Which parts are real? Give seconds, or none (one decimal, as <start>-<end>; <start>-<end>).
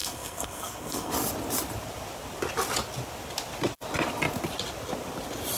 1.1-5.6